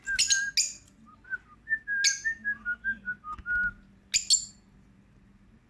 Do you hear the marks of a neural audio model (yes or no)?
no